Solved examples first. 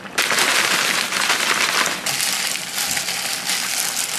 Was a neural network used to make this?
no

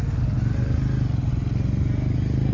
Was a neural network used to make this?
no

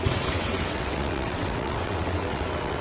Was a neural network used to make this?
yes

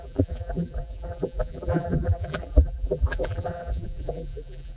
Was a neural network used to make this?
yes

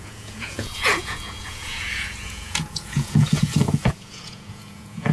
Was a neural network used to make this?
yes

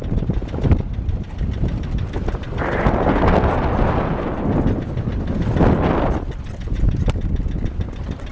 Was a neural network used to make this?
no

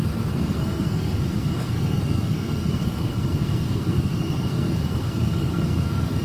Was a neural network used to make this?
yes